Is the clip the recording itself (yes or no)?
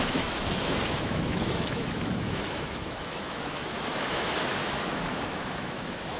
no